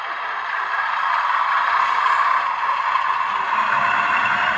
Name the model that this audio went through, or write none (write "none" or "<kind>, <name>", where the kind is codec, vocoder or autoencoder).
none